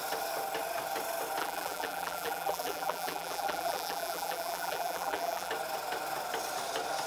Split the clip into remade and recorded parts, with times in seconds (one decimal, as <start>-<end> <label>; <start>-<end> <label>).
0.0-1.4 recorded; 1.4-5.5 remade; 5.5-7.1 recorded